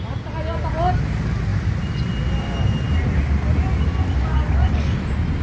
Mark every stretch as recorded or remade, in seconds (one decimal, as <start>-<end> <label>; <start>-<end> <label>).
0.0-5.4 recorded